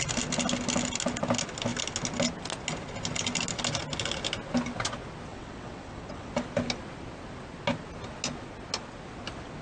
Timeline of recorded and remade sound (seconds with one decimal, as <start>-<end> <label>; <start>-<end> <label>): 0.0-5.3 recorded; 5.3-6.3 remade; 6.3-9.6 recorded